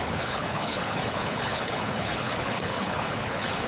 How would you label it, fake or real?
fake